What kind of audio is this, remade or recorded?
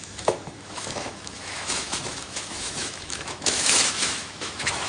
remade